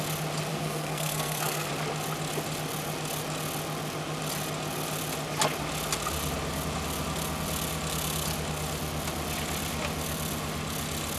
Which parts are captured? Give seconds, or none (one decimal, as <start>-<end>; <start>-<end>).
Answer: 0.0-0.5; 1.7-11.2